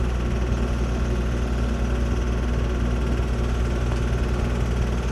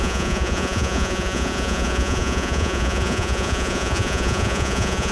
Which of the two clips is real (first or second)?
first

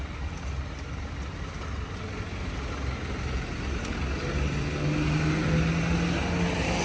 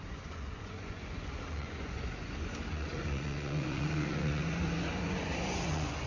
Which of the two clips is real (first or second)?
first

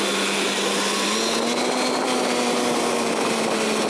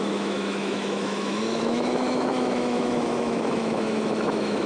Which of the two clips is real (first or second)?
first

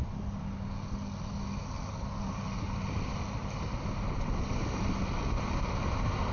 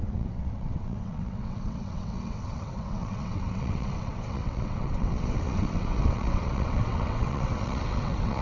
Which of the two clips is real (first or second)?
first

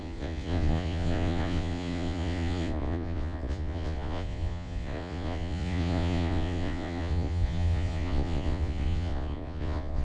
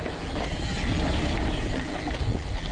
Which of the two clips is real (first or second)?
second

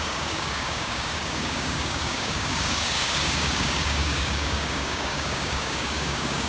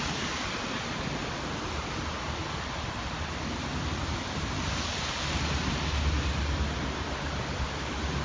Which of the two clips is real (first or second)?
second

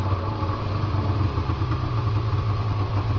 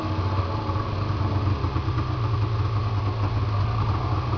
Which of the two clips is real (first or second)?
second